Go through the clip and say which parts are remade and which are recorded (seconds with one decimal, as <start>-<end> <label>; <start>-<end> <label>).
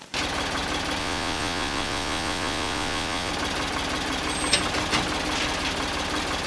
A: 0.0-1.0 recorded; 1.0-3.3 remade; 3.3-6.5 recorded